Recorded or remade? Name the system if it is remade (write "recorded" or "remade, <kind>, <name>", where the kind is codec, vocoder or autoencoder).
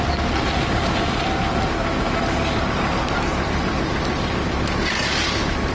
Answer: recorded